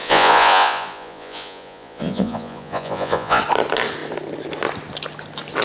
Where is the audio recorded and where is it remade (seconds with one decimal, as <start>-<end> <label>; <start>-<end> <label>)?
0.0-3.4 remade; 3.4-5.6 recorded